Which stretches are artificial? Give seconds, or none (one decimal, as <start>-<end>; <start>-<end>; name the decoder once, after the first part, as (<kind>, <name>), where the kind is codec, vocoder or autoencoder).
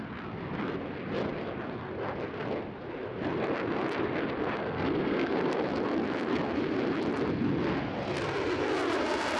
4.6-5.6 (codec, SNAC)